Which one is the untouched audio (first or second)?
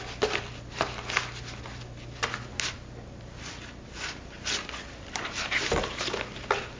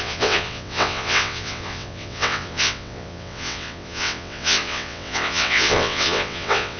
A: first